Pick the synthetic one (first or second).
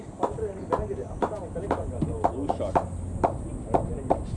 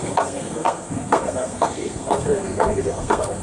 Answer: second